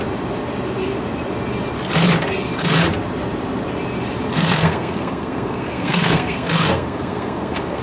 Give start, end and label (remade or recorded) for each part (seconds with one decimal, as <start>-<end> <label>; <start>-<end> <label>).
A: 0.0-4.3 recorded; 4.3-7.8 remade